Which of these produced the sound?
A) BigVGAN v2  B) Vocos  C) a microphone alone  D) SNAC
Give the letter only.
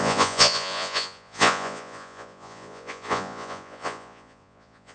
B